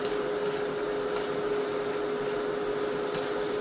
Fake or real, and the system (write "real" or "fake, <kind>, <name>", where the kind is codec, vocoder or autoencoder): real